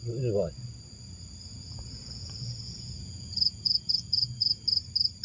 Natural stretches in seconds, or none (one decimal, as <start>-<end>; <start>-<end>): 0.0-1.5; 4.6-5.2